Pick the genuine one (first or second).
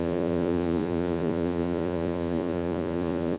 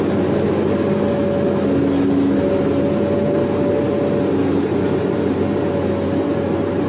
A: second